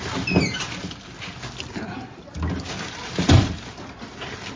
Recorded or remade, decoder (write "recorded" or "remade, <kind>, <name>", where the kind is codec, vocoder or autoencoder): recorded